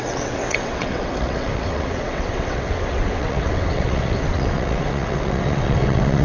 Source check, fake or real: fake